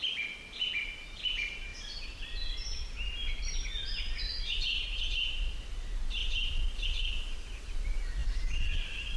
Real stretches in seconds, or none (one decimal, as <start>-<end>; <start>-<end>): 0.0-6.2; 7.1-9.2